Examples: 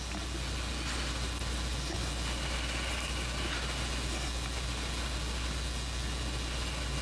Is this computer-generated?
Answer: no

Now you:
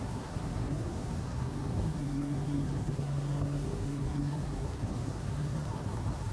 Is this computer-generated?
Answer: yes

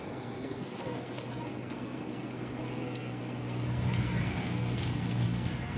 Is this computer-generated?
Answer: yes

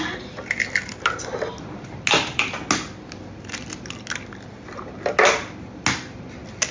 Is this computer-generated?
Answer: no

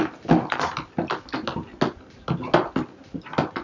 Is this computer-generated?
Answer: no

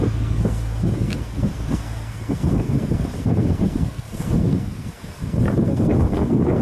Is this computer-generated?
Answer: yes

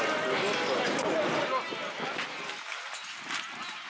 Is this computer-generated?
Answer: no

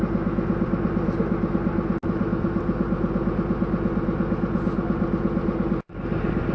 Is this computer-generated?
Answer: no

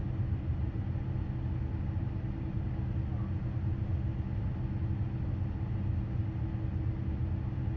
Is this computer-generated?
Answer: no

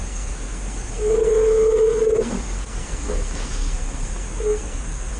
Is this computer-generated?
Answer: yes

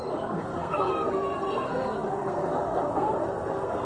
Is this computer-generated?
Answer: yes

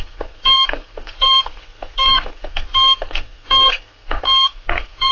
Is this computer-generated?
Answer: yes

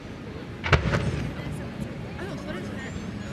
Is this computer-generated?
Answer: no